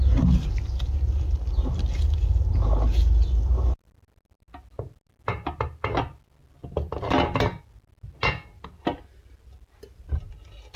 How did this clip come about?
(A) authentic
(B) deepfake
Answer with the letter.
A